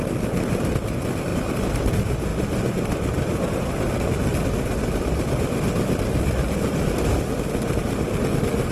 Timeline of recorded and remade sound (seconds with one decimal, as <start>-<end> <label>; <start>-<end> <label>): 0.0-8.7 recorded

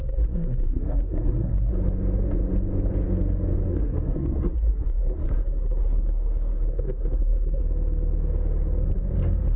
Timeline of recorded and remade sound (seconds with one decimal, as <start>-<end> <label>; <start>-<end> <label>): 0.0-1.7 remade; 1.7-3.7 recorded; 3.7-7.6 remade; 7.6-9.6 recorded

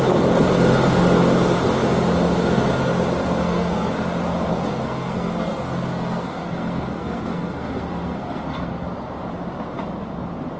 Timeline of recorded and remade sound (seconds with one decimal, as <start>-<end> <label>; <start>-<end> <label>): 0.0-3.4 recorded; 3.4-3.9 remade; 3.9-4.5 recorded; 4.5-8.9 remade; 8.9-10.6 recorded

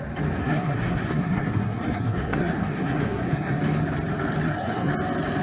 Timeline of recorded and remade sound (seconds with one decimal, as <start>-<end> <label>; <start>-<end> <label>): 0.0-0.4 recorded; 0.4-3.6 remade; 3.6-4.4 recorded; 4.4-4.9 remade; 4.9-5.4 recorded

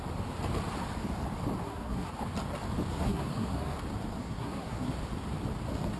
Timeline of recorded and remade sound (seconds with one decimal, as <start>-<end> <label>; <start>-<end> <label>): 0.0-1.6 recorded; 1.6-2.1 remade; 2.1-2.9 recorded; 2.9-3.8 remade; 3.8-4.2 recorded; 4.2-4.9 remade; 4.9-6.0 recorded

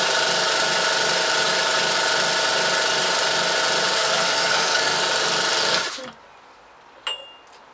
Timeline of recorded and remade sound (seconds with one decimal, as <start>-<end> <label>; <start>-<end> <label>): 0.0-3.9 recorded; 3.9-5.0 remade; 5.0-7.7 recorded